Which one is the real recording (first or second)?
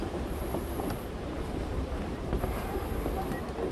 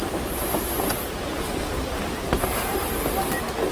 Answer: second